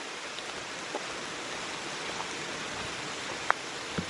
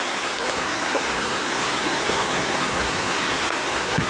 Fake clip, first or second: second